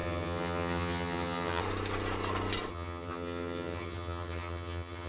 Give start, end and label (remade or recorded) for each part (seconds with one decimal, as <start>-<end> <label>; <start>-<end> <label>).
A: 0.0-1.6 remade; 1.6-2.7 recorded; 2.7-5.1 remade